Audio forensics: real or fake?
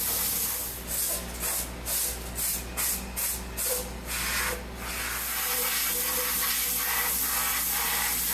real